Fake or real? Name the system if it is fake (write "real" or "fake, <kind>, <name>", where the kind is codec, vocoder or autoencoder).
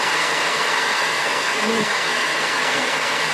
fake, codec, SNAC